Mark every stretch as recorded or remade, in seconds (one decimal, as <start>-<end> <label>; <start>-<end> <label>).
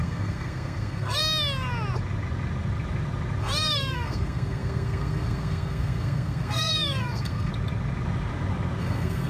0.0-1.2 remade; 1.2-3.4 recorded; 3.4-7.5 remade; 7.5-8.8 recorded; 8.8-9.3 remade